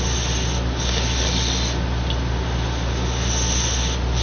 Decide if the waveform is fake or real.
real